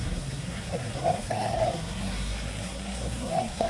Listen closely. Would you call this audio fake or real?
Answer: fake